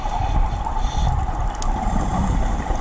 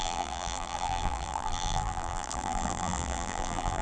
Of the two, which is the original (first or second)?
first